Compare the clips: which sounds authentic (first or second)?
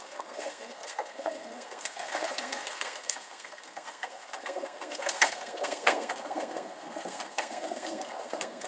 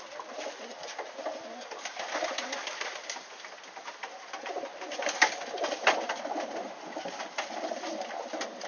second